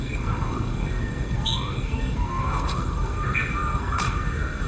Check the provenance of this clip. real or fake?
fake